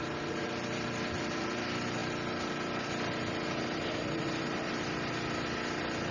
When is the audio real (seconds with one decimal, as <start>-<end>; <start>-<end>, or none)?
0.0-6.1